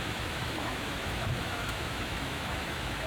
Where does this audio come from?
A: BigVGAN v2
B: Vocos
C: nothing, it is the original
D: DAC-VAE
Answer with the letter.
D